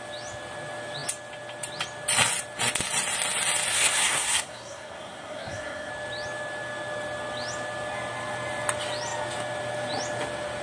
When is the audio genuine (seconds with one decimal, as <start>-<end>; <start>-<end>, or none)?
0.0-3.7; 5.9-10.6